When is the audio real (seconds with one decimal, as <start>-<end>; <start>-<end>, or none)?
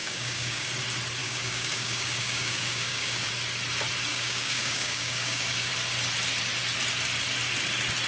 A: 0.7-1.2; 3.3-4.1; 5.7-8.1